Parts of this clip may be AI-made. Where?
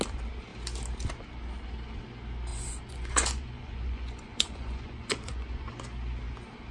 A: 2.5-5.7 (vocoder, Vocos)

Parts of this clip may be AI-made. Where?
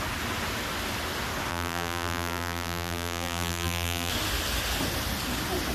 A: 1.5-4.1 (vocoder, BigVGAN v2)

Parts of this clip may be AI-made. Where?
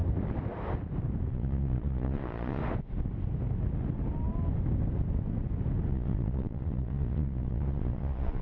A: 1.3-2.6 (vocoder, Vocos); 5.9-8.4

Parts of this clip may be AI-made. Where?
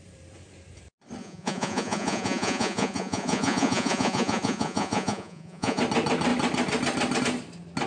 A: 1.2-5.8 (vocoder, Vocos)